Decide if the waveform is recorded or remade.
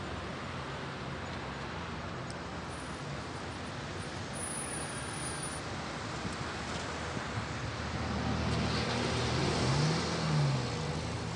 recorded